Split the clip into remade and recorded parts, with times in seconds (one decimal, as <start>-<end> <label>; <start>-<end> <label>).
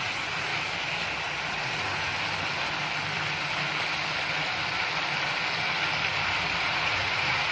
0.0-0.5 remade; 0.5-1.6 recorded; 1.6-2.1 remade; 2.1-6.6 recorded; 6.6-7.5 remade